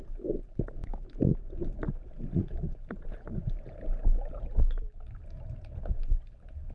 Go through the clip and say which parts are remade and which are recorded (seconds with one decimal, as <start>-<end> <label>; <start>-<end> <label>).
0.0-0.8 recorded; 0.8-1.5 remade; 1.5-6.7 recorded